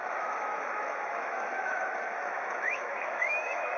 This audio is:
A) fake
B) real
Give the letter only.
A